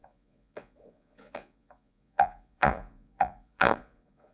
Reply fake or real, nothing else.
fake